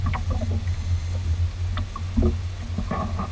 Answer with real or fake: real